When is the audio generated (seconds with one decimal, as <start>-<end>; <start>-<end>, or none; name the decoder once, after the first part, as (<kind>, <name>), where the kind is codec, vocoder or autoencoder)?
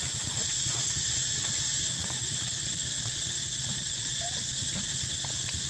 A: 0.0-5.7 (vocoder, Vocos)